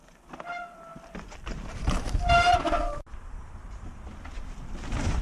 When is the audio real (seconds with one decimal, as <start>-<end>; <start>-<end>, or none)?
0.0-5.2